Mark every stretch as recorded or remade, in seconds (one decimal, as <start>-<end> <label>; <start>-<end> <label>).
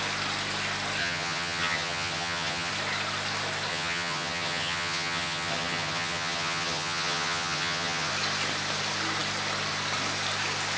0.0-1.0 recorded; 1.0-2.7 remade; 2.7-3.7 recorded; 3.7-8.1 remade; 8.1-10.8 recorded